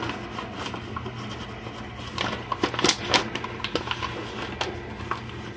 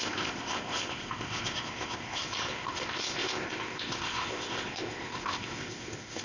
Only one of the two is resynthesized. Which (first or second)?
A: second